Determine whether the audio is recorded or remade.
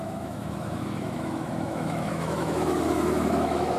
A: remade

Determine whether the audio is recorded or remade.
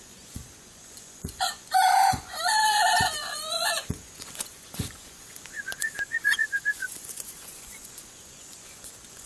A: remade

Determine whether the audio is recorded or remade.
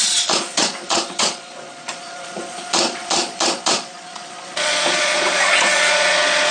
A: remade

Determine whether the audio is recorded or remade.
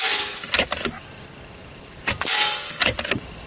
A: recorded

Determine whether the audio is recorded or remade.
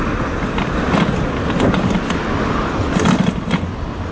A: recorded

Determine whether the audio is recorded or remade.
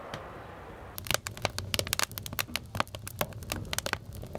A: recorded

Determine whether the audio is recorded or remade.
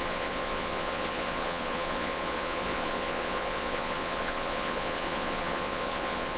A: remade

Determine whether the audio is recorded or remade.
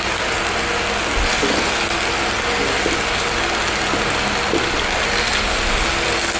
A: recorded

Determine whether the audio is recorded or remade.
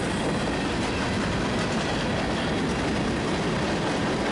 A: recorded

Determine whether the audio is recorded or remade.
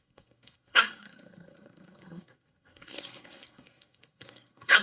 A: remade